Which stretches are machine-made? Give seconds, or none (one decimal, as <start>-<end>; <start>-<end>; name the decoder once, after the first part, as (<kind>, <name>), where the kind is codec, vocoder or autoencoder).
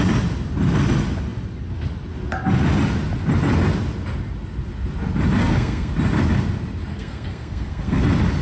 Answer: 5.4-5.9 (codec, SNAC); 6.9-8.0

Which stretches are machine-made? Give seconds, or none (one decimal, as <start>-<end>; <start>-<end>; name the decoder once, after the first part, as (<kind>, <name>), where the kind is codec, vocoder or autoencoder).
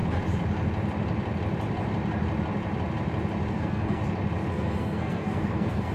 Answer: 3.5-4.0 (codec, SNAC); 4.5-5.9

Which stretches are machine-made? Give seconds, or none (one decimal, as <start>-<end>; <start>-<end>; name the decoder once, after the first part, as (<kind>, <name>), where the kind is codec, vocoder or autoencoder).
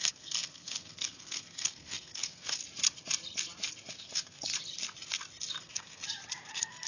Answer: 0.0-2.6 (codec, SNAC); 3.9-4.5; 5.6-6.0; 6.5-6.9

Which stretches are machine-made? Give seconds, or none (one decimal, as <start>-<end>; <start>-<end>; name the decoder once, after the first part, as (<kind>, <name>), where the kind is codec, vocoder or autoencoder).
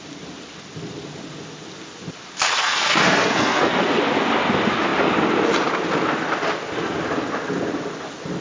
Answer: 2.6-3.7 (codec, SNAC)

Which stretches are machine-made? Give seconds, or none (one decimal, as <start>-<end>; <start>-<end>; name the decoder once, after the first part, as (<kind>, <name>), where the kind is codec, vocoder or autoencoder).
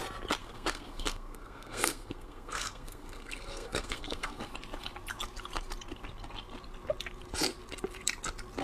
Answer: 0.4-4.5 (codec, SNAC)